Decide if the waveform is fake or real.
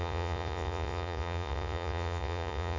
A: fake